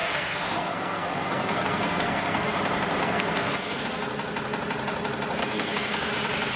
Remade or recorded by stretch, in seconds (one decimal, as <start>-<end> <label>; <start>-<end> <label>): 0.0-2.5 remade; 2.5-3.0 recorded; 3.0-3.8 remade; 3.8-5.4 recorded; 5.4-6.1 remade; 6.1-6.6 recorded